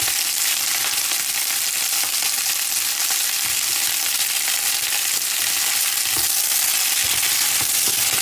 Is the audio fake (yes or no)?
no